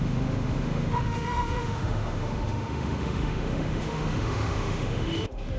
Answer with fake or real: fake